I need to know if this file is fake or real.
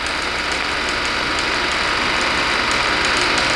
real